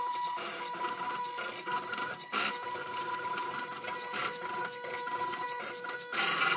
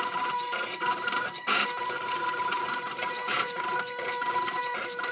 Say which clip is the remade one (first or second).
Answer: second